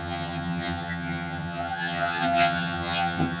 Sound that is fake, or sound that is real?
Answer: fake